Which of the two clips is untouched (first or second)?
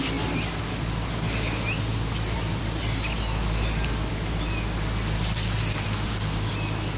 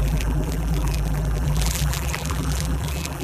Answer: first